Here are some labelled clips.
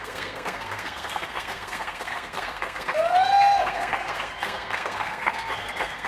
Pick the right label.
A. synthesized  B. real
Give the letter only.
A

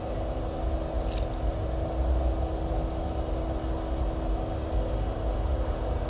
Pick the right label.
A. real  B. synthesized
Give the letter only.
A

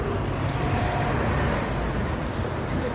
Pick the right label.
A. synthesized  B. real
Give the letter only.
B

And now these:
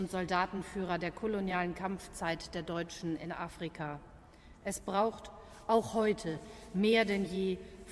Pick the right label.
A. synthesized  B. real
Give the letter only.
A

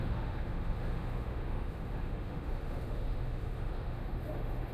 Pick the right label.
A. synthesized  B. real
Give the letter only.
A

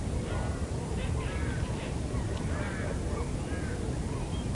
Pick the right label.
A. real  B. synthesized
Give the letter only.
A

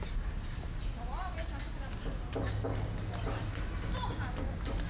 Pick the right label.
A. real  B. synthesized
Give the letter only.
A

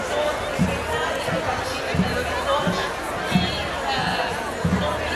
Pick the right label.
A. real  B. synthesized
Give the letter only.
A